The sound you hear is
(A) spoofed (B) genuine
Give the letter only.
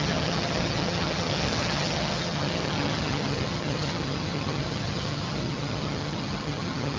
A